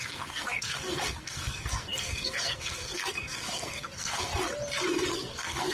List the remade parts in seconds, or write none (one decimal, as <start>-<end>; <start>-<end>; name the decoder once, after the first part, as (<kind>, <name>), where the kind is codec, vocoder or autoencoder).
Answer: 0.0-4.3 (codec, SNAC); 5.1-5.7